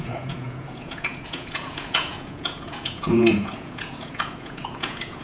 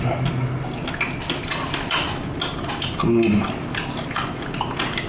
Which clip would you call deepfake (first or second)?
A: first